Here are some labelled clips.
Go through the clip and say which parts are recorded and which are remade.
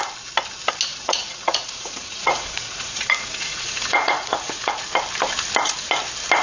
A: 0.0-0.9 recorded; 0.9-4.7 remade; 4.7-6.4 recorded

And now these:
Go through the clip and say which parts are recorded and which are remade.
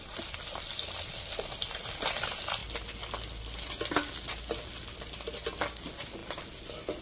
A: 0.0-7.0 recorded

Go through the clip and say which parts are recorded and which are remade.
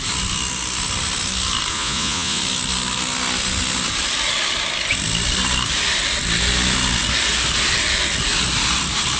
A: 0.0-1.7 recorded; 1.7-2.4 remade; 2.4-9.2 recorded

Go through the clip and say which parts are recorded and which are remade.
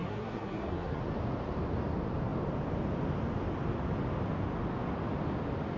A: 0.0-1.0 remade; 1.0-5.8 recorded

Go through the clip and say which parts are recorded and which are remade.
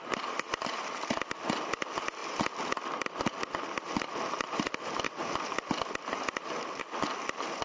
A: 0.0-7.6 recorded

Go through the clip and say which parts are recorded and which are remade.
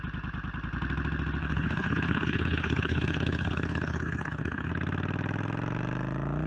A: 0.0-1.4 recorded; 1.4-4.7 remade; 4.7-6.5 recorded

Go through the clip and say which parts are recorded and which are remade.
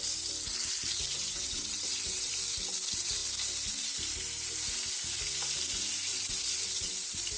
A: 0.0-1.1 recorded; 1.1-2.3 remade; 2.3-6.1 recorded; 6.1-6.9 remade; 6.9-7.4 recorded